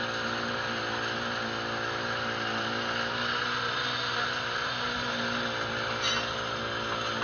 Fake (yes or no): no